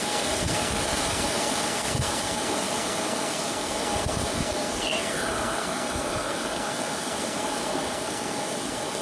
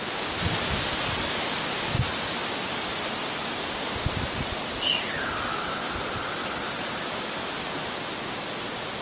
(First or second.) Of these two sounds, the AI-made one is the first